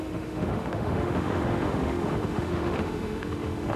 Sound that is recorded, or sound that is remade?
remade